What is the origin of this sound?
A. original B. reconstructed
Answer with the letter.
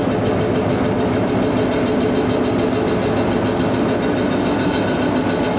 A